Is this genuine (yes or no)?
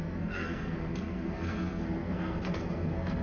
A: no